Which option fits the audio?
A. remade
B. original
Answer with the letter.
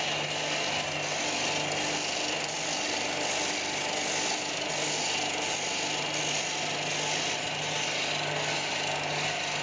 B